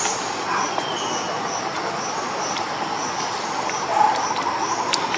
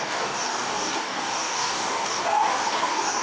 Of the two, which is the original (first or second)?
first